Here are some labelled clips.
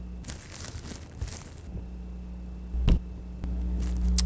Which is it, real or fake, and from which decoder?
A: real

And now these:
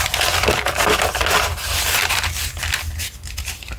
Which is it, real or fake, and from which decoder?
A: real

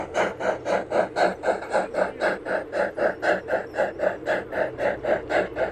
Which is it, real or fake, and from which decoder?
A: real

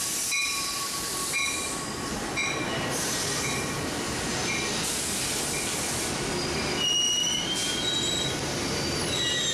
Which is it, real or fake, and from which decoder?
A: real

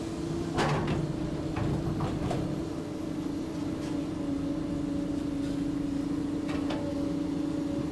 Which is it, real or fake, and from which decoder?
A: real